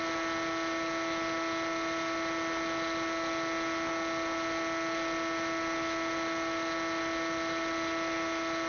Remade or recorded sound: recorded